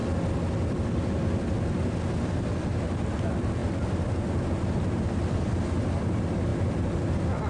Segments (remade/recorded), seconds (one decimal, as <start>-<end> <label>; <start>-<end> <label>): 0.0-6.5 recorded; 6.5-7.0 remade; 7.0-7.5 recorded